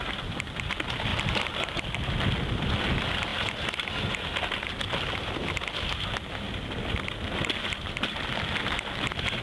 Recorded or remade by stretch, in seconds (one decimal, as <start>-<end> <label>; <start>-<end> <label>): 0.0-9.4 recorded